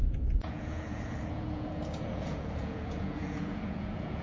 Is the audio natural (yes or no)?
no